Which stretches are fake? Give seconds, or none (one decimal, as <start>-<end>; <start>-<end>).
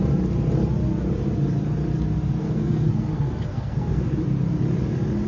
2.4-4.2